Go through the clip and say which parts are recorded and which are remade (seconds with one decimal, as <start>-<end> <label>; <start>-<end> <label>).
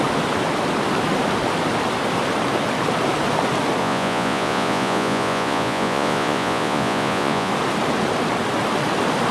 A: 0.0-3.8 recorded; 3.8-7.5 remade; 7.5-9.3 recorded